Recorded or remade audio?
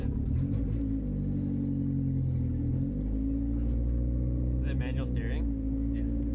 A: recorded